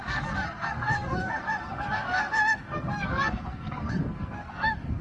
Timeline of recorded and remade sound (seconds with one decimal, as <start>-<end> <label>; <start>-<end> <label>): 0.0-5.0 remade